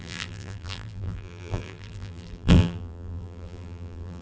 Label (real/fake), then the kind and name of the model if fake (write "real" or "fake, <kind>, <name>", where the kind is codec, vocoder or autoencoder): fake, vocoder, BigVGAN v2